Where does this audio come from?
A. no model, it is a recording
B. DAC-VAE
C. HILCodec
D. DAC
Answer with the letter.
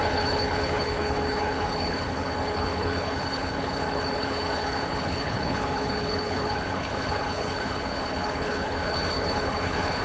C